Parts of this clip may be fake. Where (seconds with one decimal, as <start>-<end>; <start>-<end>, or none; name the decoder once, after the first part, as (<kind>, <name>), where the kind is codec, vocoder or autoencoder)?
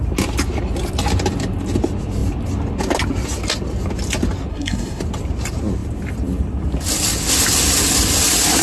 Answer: 4.5-5.0 (codec, SNAC)